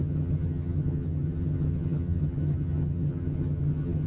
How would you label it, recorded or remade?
remade